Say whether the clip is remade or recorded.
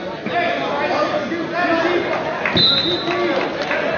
recorded